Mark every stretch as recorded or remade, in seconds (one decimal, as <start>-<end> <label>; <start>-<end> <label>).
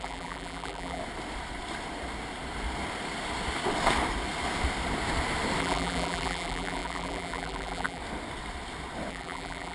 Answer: 0.0-1.0 remade; 1.0-5.6 recorded; 5.6-8.0 remade; 8.0-9.1 recorded; 9.1-9.7 remade